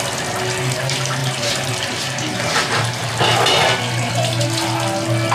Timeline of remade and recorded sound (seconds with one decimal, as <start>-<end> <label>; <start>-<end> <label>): 0.0-1.2 recorded; 1.2-3.1 remade; 3.1-5.3 recorded